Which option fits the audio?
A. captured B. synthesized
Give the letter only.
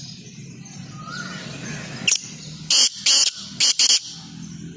A